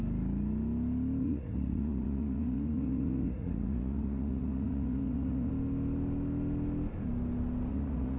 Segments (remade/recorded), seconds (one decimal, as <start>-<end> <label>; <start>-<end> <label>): 0.0-1.2 recorded; 1.2-5.5 remade; 5.5-7.7 recorded; 7.7-8.2 remade